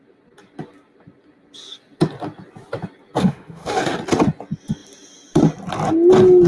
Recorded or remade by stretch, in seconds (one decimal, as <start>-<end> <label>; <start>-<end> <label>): 0.0-3.2 recorded; 3.2-3.8 remade; 3.8-6.5 recorded